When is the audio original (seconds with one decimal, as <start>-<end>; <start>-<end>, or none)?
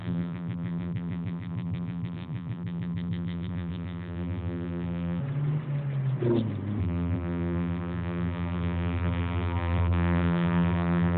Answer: 5.2-6.8